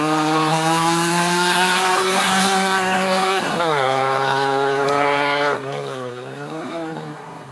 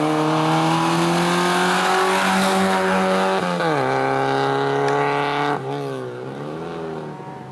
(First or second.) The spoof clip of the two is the first